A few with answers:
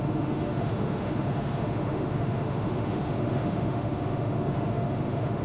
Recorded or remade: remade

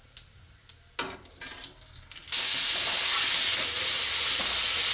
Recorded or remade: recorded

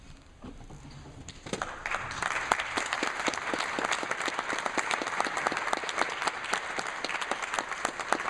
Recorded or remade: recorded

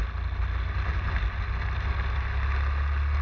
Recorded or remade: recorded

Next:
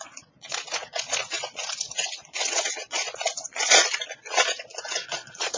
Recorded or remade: remade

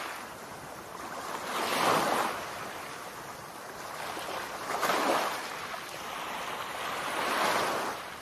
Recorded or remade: recorded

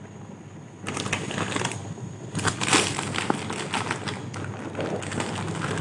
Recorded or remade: recorded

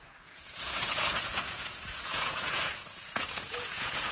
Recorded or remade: remade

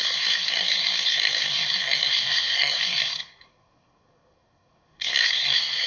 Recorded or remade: remade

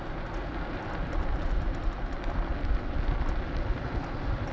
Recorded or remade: recorded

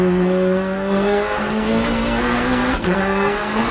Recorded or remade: remade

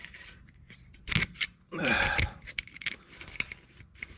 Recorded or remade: remade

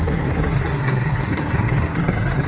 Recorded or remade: remade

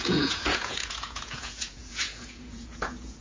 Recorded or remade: remade